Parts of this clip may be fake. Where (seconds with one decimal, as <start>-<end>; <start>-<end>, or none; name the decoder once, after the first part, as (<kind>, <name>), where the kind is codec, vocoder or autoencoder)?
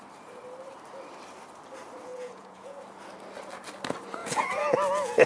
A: 2.1-2.8 (vocoder, Vocos); 4.2-5.3